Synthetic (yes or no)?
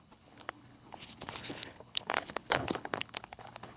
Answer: yes